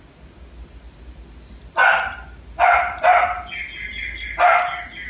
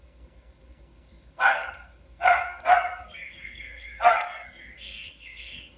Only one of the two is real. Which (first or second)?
first